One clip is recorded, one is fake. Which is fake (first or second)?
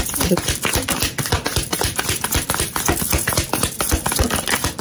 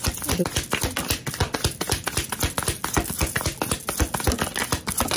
first